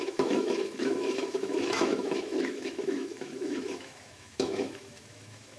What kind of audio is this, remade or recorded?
remade